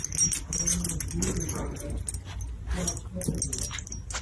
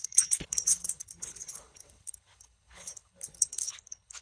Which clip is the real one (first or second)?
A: first